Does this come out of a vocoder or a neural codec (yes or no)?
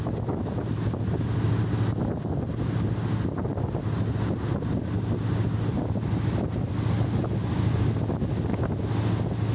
no